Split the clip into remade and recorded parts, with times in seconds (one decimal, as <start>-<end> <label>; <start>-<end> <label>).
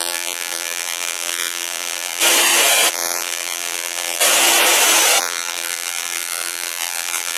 0.0-2.2 remade; 2.2-2.9 recorded; 2.9-4.2 remade; 4.2-5.2 recorded; 5.2-7.4 remade